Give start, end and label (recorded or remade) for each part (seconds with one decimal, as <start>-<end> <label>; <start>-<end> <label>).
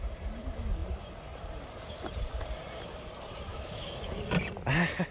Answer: 0.0-3.5 recorded; 3.5-4.2 remade; 4.2-5.1 recorded